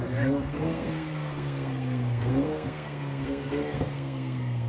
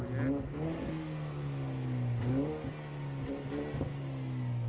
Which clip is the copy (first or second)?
first